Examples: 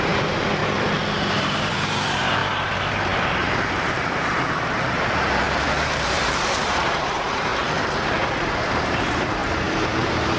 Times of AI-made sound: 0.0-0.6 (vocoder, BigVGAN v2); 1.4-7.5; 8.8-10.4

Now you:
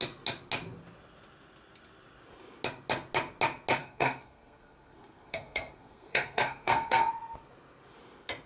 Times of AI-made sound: 3.8-7.1 (codec, SNAC)